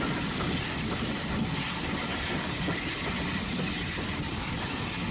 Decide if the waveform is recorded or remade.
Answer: recorded